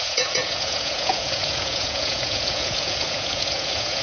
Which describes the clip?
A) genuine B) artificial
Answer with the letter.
B